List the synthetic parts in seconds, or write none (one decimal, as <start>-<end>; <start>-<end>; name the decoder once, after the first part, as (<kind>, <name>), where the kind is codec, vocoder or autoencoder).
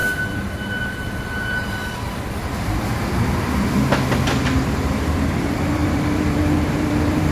0.8-7.3 (vocoder, BigVGAN v2)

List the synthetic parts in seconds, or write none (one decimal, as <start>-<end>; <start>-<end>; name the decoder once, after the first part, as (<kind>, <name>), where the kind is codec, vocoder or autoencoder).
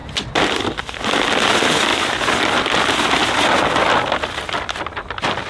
0.8-1.9 (vocoder, BigVGAN v2); 4.9-5.5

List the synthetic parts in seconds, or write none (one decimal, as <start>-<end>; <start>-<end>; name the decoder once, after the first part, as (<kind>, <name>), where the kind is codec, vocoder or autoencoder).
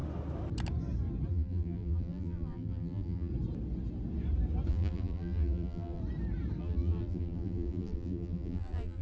1.3-3.3 (vocoder, BigVGAN v2); 4.7-6.0; 6.6-9.0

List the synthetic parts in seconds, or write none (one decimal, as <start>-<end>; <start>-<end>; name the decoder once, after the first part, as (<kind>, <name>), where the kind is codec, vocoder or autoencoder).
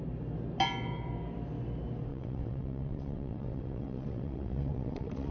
2.1-5.3 (vocoder, WaveNeXt)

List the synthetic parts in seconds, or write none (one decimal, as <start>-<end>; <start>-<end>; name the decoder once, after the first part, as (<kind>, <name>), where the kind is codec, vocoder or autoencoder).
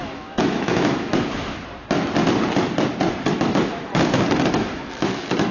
0.0-1.4 (autoencoder, DAC-VAE); 3.3-3.9; 4.5-5.5